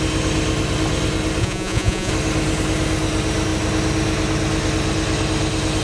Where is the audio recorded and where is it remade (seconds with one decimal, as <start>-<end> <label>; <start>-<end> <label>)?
0.0-1.4 recorded; 1.4-2.1 remade; 2.1-5.8 recorded